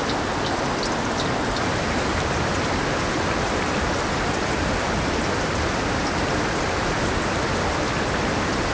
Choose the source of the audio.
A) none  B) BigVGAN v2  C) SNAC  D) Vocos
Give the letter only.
B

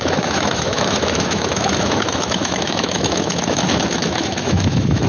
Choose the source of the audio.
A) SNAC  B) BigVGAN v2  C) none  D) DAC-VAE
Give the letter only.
D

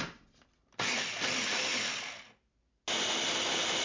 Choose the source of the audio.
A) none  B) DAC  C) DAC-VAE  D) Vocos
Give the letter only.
A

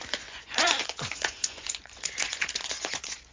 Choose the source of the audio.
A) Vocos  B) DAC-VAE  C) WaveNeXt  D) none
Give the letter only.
A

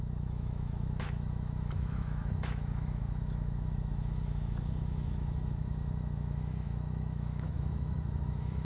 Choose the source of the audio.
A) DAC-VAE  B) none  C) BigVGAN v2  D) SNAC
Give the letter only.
A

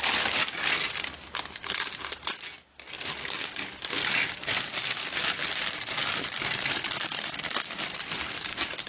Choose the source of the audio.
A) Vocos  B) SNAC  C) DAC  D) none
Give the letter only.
D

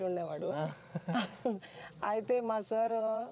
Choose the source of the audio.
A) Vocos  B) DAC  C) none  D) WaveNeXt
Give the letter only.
A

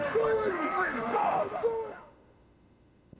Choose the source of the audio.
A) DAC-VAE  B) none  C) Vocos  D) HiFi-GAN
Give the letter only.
A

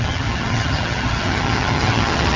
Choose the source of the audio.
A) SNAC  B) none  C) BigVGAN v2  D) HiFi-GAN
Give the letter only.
D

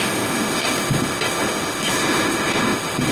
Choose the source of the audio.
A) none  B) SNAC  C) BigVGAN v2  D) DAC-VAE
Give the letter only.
D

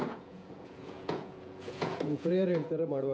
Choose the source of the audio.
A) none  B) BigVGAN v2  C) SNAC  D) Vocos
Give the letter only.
D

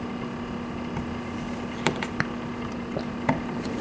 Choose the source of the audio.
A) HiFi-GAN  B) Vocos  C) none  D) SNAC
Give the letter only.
C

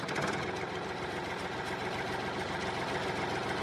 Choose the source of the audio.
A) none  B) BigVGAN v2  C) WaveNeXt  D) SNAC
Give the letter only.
B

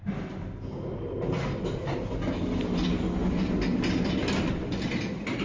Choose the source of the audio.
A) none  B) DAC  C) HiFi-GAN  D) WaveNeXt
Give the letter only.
A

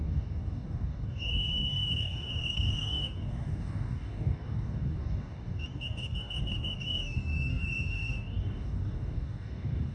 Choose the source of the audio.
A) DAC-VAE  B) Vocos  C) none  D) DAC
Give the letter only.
D